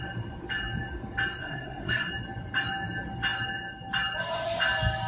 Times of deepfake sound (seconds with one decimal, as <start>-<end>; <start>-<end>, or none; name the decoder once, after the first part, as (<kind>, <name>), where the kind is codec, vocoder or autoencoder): 1.4-2.1 (codec, SNAC)